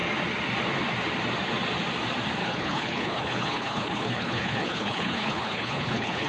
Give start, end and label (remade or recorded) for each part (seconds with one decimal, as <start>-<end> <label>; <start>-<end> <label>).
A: 0.0-2.4 recorded; 2.4-6.3 remade